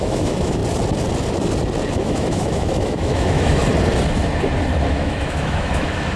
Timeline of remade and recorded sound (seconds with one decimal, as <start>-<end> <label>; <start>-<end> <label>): 0.0-0.6 remade; 0.6-1.9 recorded; 1.9-3.6 remade; 3.6-4.9 recorded; 4.9-6.2 remade